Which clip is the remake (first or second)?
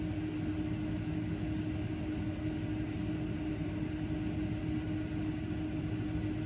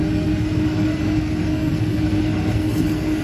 second